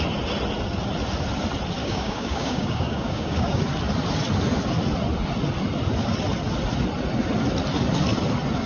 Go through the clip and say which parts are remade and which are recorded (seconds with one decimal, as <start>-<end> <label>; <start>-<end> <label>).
0.0-1.8 recorded; 1.8-3.6 remade; 3.6-8.7 recorded